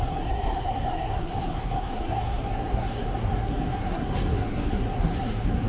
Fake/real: fake